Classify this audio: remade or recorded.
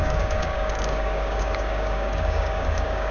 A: remade